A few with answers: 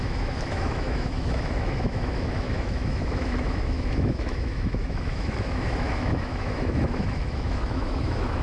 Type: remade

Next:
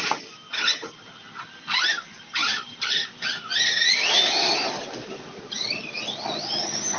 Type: recorded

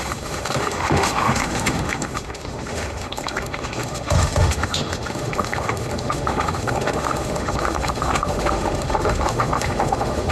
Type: remade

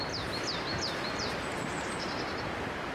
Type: remade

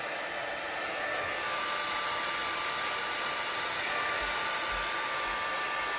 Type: recorded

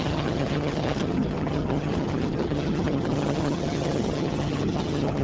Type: remade